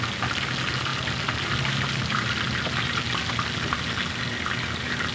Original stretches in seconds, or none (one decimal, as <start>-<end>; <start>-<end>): 0.0-5.1